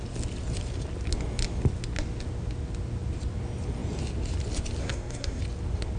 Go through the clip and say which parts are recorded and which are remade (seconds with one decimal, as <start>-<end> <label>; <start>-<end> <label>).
0.0-4.8 recorded; 4.8-5.4 remade; 5.4-6.0 recorded